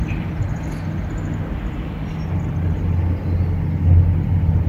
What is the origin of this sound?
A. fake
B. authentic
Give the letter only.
B